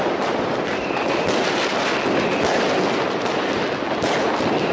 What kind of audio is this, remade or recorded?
recorded